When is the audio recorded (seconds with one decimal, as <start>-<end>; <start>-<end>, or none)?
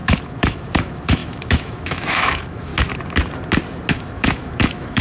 2.7-3.9